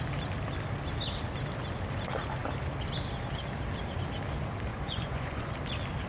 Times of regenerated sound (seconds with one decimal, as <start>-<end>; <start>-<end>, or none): 4.7-5.5